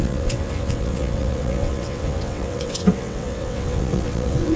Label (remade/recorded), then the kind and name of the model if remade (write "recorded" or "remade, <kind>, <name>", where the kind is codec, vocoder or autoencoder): remade, vocoder, WaveNeXt